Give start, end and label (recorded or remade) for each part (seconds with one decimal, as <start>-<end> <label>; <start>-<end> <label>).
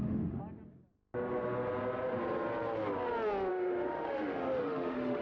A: 0.0-0.4 remade; 0.4-3.5 recorded; 3.5-5.2 remade